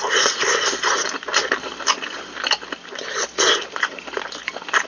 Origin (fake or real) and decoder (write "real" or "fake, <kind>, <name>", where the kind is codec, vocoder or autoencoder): real